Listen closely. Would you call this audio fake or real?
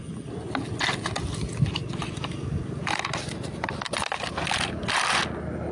real